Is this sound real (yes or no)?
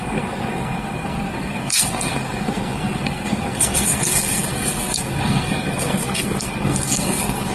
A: no